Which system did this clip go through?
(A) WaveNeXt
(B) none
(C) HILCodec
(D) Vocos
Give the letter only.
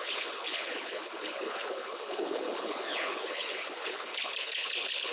C